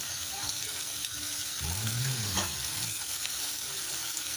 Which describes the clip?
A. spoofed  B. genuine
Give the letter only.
A